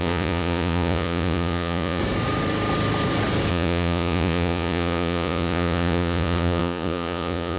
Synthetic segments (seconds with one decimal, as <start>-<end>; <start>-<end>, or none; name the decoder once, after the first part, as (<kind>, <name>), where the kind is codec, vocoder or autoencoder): 0.0-2.0 (vocoder, Vocos); 3.5-7.6

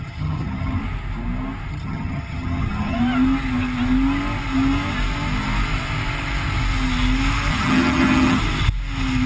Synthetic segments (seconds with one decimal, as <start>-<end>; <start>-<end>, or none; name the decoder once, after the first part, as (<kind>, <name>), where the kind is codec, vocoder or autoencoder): 0.0-0.8 (vocoder, HiFi-GAN); 1.7-3.0; 7.5-8.4

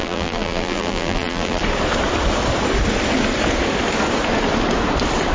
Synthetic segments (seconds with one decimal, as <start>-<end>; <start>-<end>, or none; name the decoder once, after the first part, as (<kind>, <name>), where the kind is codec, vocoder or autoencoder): 0.0-1.6 (vocoder, BigVGAN v2)

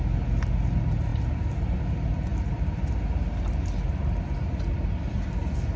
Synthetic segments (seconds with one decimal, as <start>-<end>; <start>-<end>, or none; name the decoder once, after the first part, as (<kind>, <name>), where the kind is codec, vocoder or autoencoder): none

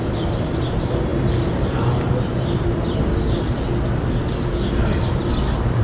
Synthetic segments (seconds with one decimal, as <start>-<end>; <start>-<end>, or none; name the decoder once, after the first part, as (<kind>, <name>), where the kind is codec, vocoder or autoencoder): none

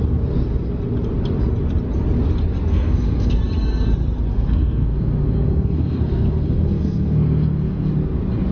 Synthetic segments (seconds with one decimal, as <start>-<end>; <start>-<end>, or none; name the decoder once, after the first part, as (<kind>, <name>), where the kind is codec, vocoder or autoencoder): 2.7-3.4 (codec, SNAC); 4.3-7.9